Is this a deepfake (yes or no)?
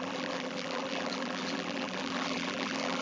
yes